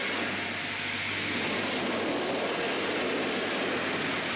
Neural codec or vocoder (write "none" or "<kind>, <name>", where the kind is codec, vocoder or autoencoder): none